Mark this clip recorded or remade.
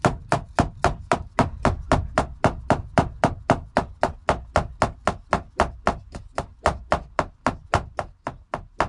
recorded